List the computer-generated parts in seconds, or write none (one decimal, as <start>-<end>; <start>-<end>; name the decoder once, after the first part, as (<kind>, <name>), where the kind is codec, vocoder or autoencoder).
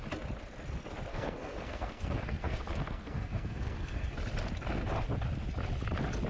1.1-4.2 (codec, SNAC)